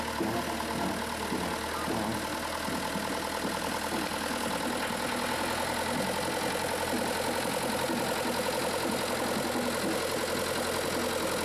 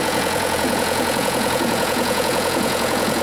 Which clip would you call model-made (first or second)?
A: second